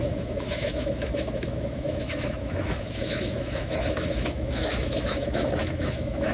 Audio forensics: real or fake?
fake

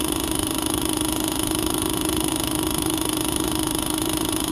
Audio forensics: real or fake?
fake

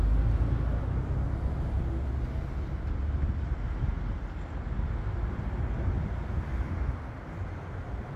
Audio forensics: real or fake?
real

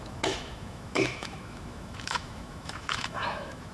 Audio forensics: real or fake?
fake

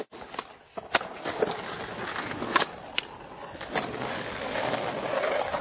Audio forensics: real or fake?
real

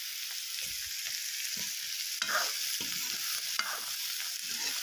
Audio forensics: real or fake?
real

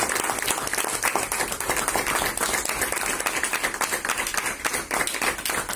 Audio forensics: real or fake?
real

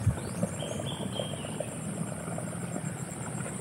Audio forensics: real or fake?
real